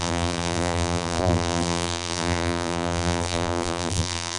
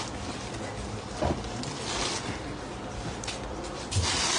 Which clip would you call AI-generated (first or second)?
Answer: first